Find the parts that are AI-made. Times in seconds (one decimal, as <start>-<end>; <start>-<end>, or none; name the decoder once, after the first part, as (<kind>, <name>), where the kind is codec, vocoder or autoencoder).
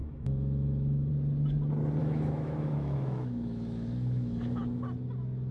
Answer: 0.0-1.1 (autoencoder, DAC-VAE); 2.0-4.6